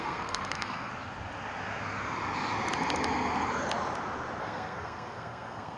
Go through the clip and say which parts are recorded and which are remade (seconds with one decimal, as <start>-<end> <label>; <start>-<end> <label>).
0.0-0.9 remade; 0.9-4.4 recorded; 4.4-5.8 remade